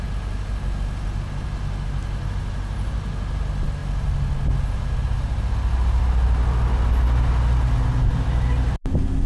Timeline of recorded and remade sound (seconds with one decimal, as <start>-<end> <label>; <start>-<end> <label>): 0.0-9.3 recorded

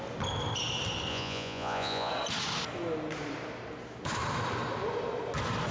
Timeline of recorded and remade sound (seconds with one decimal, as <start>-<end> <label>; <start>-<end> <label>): 0.0-1.1 recorded; 1.1-2.1 remade; 2.1-5.7 recorded

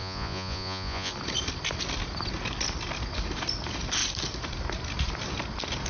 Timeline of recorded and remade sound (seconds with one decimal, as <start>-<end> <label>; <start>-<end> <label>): 0.0-1.1 remade; 1.1-5.9 recorded

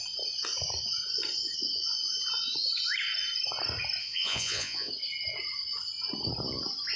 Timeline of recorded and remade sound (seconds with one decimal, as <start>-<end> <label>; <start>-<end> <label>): 0.0-4.0 recorded; 4.0-4.9 remade; 4.9-7.0 recorded

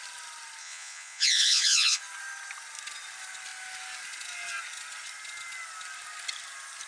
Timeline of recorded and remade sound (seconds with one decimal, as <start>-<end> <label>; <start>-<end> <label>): 0.0-0.6 recorded; 0.6-2.0 remade; 2.0-6.9 recorded

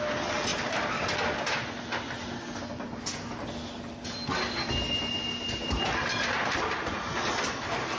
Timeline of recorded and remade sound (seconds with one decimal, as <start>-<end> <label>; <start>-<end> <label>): 0.0-8.0 recorded